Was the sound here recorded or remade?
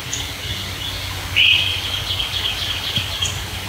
remade